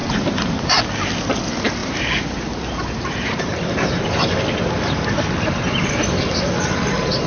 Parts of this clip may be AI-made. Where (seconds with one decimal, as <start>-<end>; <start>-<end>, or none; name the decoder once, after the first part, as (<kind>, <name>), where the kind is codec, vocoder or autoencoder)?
0.0-0.8 (vocoder, BigVGAN v2); 1.8-4.3